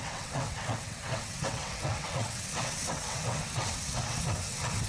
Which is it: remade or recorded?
remade